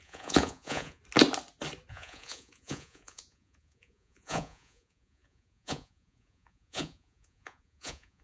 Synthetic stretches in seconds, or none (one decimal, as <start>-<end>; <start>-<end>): 0.0-1.0; 1.9-8.2